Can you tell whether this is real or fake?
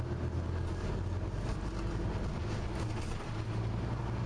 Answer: real